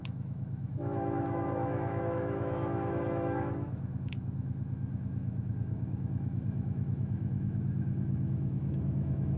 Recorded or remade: remade